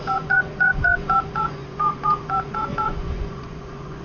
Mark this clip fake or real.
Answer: fake